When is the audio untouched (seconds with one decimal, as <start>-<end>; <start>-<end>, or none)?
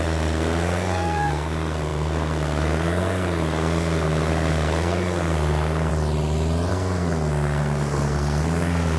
5.9-6.7